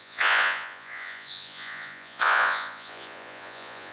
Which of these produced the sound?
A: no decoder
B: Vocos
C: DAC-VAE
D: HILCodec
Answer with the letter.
B